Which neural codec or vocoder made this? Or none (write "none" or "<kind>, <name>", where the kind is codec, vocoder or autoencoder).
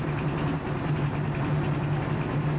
none